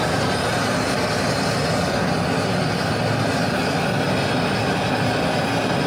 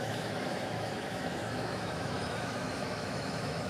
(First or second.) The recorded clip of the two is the first